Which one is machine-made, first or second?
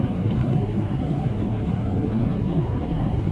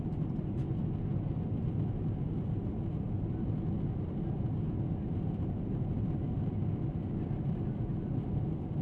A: first